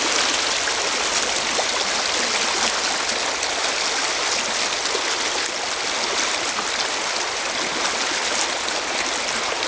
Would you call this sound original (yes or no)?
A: yes